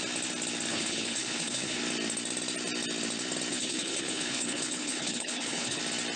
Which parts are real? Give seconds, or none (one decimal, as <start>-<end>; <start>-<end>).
0.0-0.7; 1.8-3.5; 5.8-6.2